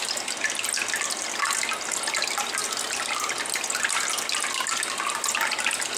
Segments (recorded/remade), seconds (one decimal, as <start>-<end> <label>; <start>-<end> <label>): 0.0-2.6 recorded; 2.6-4.1 remade; 4.1-6.0 recorded